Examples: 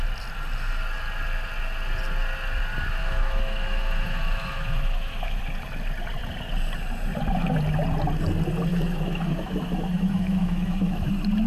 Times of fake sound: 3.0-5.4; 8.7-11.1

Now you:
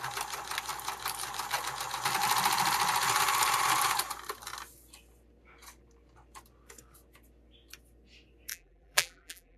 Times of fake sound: 8.5-9.6

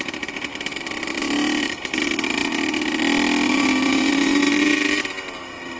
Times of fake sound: 0.0-0.5; 1.6-2.4; 3.5-5.8